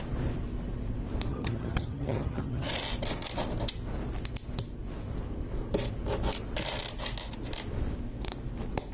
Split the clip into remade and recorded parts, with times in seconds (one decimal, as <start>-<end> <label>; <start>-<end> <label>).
0.0-1.3 recorded; 1.3-2.7 remade; 2.7-8.9 recorded